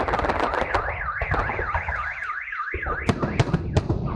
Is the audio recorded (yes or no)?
yes